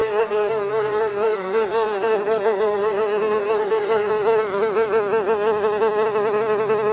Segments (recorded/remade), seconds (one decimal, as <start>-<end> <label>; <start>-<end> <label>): 0.0-4.1 remade; 4.1-6.9 recorded